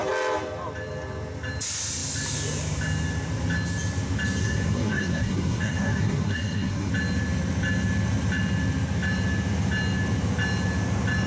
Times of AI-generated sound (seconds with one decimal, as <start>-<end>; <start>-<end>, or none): 4.4-6.9

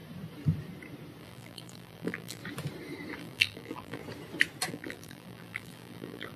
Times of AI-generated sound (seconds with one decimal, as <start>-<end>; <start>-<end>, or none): 1.2-2.4; 3.2-4.0; 4.7-6.4

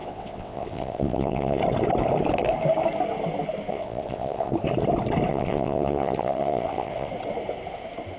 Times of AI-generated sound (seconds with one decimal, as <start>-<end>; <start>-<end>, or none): 0.0-1.6; 3.7-4.5; 5.3-7.1

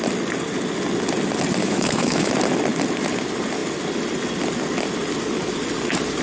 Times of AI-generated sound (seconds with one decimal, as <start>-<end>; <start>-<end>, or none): 1.6-2.3

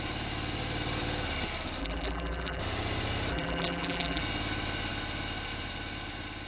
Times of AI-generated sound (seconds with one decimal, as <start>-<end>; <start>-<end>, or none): 1.8-2.6; 3.3-4.2

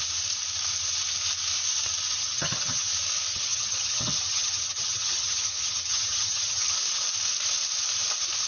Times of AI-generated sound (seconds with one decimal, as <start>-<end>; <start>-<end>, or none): 2.2-2.9; 3.3-6.7

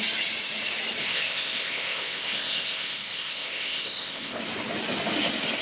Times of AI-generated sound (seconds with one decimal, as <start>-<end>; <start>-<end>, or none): 1.0-4.4